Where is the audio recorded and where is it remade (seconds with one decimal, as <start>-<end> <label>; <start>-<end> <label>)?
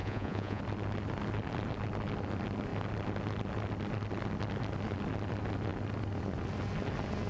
0.0-0.6 remade; 0.6-7.3 recorded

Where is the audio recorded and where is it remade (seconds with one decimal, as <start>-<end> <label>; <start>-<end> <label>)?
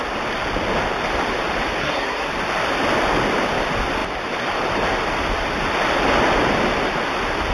0.0-1.8 recorded; 1.8-2.3 remade; 2.3-7.5 recorded